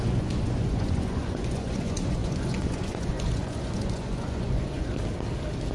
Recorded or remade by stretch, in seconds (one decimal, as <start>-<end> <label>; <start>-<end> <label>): 0.0-4.9 remade; 4.9-5.7 recorded